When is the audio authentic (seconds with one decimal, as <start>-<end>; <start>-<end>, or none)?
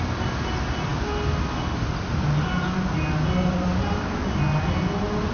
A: 0.0-5.3